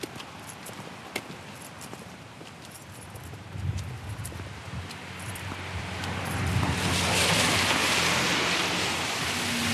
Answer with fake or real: real